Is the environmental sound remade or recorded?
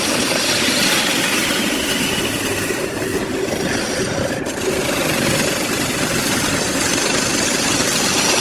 recorded